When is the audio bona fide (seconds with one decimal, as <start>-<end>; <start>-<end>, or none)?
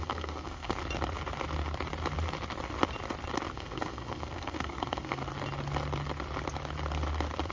0.8-3.5; 5.2-7.5